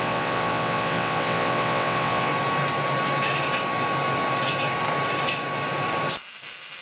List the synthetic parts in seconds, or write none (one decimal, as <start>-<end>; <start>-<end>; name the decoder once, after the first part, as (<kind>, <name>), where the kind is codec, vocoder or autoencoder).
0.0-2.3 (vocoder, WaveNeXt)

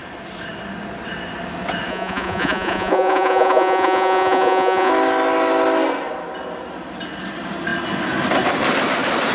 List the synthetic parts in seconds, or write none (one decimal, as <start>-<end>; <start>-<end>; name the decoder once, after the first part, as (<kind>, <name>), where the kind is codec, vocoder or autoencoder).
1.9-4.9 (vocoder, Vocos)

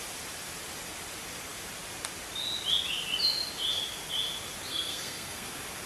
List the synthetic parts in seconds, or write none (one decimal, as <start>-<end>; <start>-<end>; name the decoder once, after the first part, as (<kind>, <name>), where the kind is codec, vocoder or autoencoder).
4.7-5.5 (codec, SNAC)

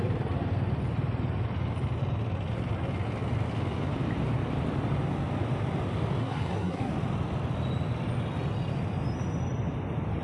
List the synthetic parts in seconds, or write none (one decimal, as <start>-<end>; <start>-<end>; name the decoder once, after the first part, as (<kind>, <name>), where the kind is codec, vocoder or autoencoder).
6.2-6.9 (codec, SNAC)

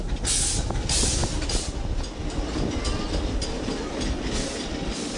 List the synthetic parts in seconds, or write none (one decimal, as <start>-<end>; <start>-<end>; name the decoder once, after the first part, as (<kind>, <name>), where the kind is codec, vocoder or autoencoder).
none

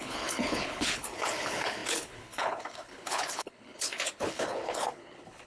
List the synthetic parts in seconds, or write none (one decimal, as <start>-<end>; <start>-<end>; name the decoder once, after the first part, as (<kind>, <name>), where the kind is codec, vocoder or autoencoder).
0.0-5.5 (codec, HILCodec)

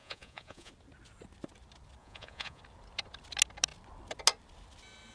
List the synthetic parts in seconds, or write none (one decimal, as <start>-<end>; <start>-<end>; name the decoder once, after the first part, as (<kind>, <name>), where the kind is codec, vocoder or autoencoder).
0.0-0.7 (vocoder, Vocos); 2.0-2.6

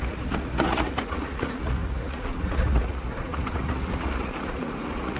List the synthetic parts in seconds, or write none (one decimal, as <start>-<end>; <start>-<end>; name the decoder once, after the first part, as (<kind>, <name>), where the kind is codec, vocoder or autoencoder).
0.0-5.2 (vocoder, Vocos)